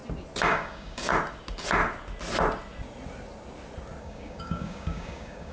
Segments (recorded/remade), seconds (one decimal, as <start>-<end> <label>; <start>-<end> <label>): 0.0-0.5 recorded; 0.5-1.1 remade; 1.1-4.0 recorded; 4.0-5.5 remade